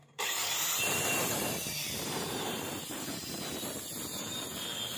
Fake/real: fake